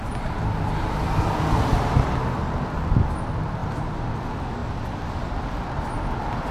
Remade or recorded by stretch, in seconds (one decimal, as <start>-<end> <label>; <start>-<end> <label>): 0.0-6.5 recorded